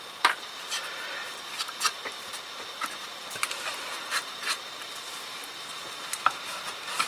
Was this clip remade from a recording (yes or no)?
yes